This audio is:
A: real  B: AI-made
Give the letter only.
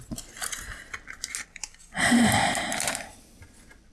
A